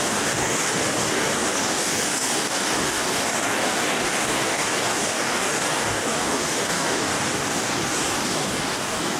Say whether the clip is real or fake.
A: fake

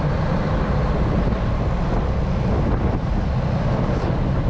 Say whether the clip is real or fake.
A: real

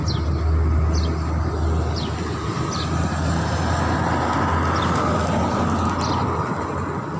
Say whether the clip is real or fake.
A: real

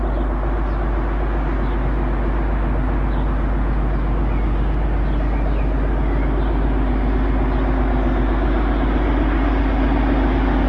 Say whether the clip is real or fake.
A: real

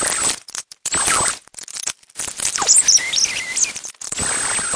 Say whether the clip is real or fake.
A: real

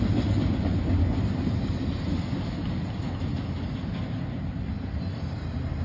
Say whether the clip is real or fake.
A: real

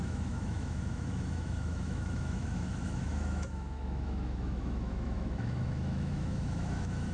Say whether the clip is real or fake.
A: fake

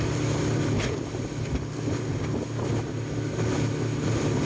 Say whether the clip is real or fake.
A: real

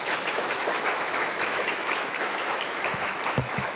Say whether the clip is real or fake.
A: fake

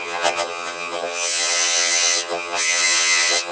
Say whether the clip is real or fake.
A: fake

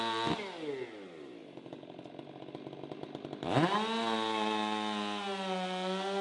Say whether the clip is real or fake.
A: real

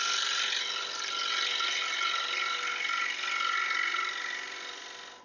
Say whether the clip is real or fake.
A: real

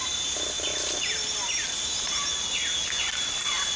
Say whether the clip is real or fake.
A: real